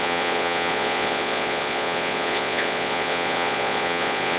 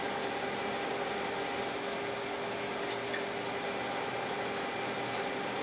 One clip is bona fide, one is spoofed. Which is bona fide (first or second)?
second